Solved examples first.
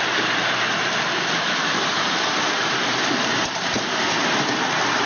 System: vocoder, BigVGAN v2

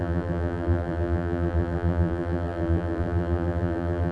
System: vocoder, BigVGAN v2